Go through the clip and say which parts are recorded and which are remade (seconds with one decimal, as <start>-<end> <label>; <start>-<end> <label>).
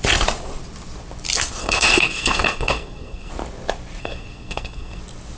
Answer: 0.0-1.6 recorded; 1.6-3.3 remade; 3.3-4.0 recorded; 4.0-5.0 remade; 5.0-5.4 recorded